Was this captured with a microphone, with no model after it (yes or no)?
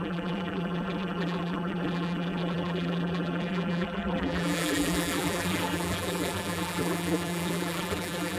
no